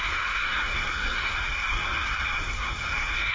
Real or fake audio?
fake